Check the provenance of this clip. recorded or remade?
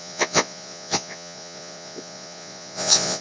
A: remade